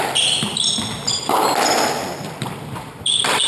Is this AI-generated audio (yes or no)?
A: yes